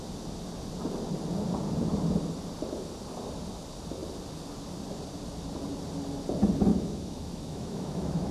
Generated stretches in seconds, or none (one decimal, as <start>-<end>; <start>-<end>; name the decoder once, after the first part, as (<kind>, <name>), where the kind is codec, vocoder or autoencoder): 6.7-8.3 (autoencoder, DAC-VAE)

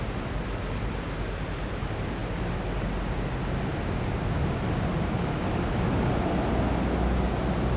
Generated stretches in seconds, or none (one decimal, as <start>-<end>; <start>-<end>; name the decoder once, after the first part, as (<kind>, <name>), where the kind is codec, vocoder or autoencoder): none

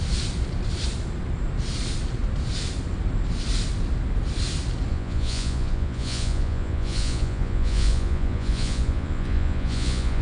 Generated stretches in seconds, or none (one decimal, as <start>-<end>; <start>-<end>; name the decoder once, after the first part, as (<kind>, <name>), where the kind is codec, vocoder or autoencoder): 4.9-10.2 (vocoder, Vocos)

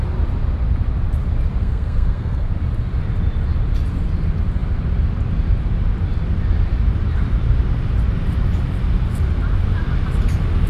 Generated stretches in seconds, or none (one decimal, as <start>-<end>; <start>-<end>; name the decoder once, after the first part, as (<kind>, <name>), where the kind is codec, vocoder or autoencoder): 1.6-2.5 (codec, SNAC)